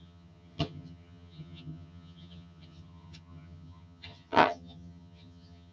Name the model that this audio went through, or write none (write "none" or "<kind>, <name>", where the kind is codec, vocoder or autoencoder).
vocoder, HiFi-GAN